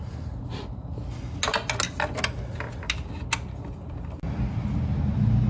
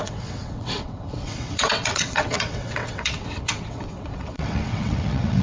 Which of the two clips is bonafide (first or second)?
first